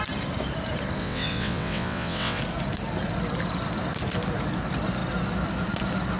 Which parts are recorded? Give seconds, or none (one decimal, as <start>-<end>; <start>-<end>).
0.0-1.0; 2.4-6.2